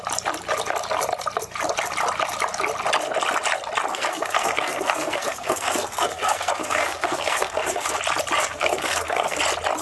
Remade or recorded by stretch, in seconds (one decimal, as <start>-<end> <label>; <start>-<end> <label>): 0.0-3.9 recorded; 3.9-8.0 remade; 8.0-8.4 recorded; 8.4-9.4 remade; 9.4-9.8 recorded

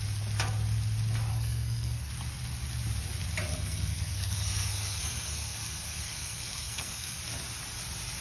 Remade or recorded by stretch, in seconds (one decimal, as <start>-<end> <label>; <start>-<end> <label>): 0.0-1.3 recorded; 1.3-2.1 remade; 2.1-3.5 recorded; 3.5-7.2 remade; 7.2-8.2 recorded